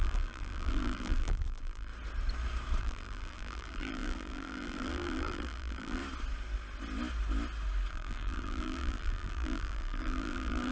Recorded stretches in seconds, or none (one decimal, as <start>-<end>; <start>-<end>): 1.9-2.8; 6.0-7.9